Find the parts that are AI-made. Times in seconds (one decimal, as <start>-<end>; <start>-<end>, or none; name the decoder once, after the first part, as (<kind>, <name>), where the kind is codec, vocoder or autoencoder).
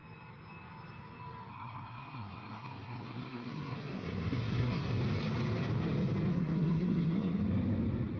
1.5-5.0 (codec, SNAC); 6.3-7.4